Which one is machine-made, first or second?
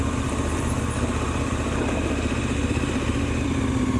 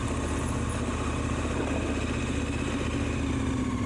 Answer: first